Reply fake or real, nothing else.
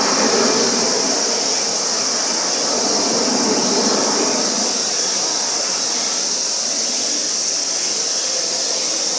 real